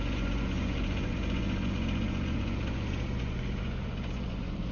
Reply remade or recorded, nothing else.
remade